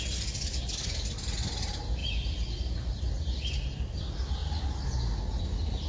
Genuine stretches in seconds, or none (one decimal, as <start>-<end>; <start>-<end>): 0.0-5.9